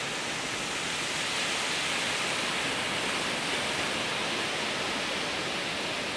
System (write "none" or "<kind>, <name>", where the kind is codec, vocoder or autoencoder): none